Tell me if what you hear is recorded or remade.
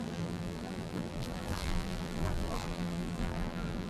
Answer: remade